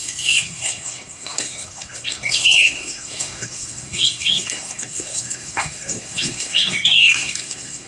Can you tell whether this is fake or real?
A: fake